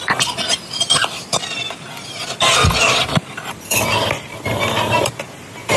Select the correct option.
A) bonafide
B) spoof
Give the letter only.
A